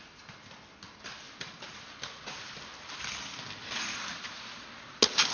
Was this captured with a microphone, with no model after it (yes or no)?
yes